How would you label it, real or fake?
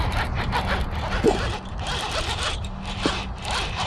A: real